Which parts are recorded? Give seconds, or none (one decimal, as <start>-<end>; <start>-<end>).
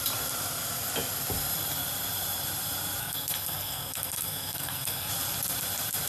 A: 0.0-3.0; 5.1-6.1